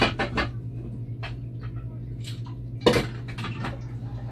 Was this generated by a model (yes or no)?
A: no